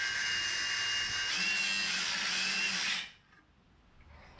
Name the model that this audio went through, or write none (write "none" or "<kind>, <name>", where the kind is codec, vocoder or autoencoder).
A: none